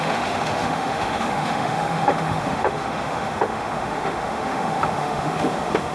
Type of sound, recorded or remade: remade